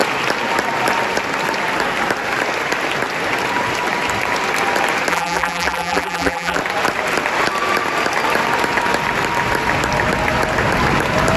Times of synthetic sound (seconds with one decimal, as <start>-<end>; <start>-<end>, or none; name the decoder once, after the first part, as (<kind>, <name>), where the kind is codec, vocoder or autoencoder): 5.1-6.6 (vocoder, BigVGAN v2)